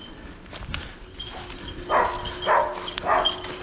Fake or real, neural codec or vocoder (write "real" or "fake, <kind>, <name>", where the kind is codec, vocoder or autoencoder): real